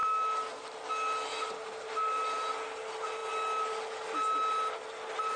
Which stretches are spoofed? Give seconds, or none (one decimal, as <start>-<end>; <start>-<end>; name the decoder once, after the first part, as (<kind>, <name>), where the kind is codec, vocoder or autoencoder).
none